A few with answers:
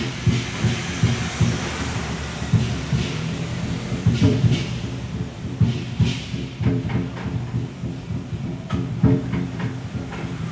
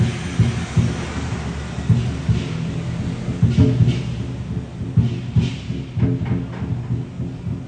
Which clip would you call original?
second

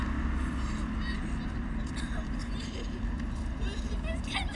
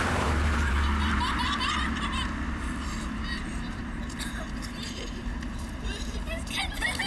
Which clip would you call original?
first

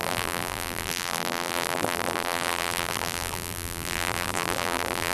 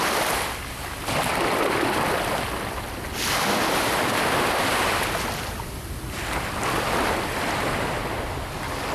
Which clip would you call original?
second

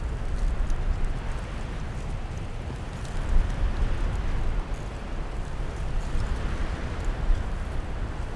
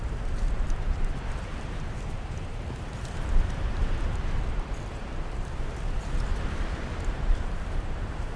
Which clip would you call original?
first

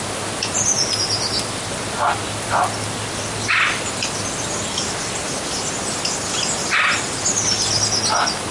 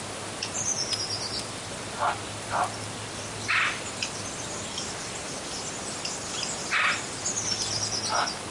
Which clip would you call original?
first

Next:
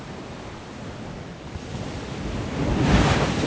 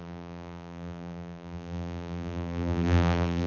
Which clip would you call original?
first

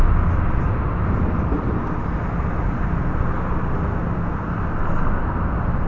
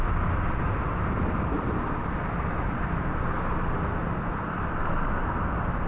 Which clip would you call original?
first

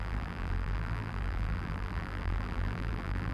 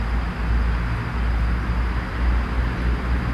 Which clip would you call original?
second